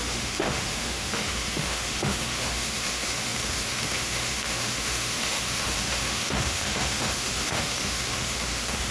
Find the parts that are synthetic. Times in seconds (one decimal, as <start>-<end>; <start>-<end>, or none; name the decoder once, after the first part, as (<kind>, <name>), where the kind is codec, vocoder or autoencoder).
0.0-8.9 (autoencoder, DAC-VAE)